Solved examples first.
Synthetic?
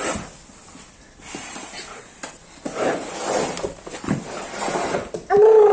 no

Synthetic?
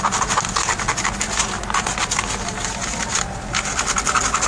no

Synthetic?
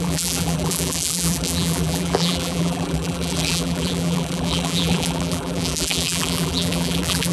yes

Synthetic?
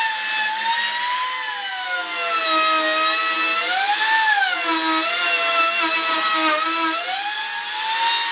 no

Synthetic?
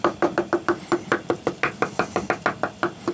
no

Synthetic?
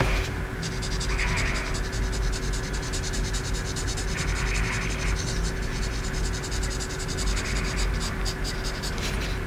no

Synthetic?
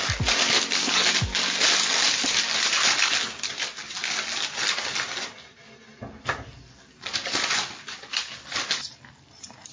no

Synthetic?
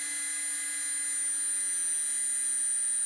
no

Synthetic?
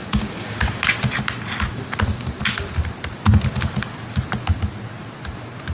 no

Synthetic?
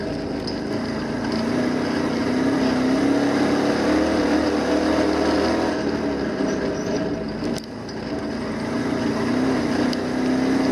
no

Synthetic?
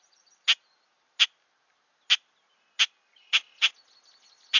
no